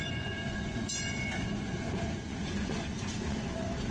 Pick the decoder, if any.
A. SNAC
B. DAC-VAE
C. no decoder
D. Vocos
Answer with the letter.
D